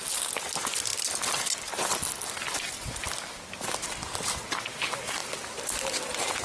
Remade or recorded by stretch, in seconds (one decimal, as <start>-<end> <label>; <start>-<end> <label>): 0.0-6.4 recorded